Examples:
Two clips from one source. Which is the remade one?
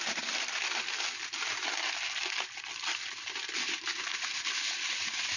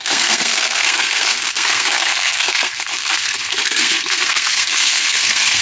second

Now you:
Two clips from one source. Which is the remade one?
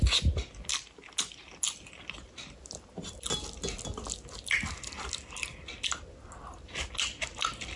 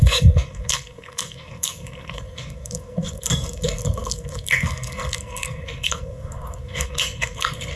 second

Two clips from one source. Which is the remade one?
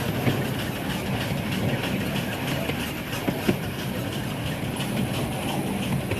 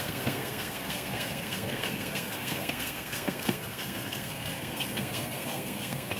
second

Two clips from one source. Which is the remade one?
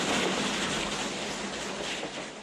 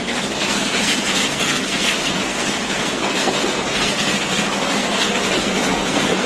second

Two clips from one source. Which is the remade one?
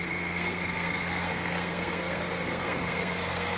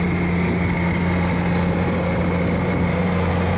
first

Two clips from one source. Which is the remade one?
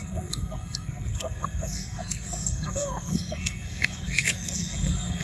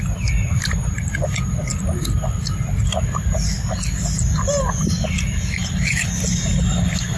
first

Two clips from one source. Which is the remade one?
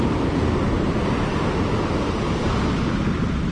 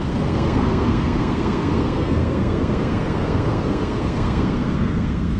second